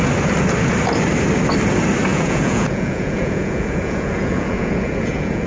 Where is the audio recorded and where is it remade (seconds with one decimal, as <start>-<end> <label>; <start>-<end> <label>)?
0.0-2.1 recorded; 2.1-5.5 remade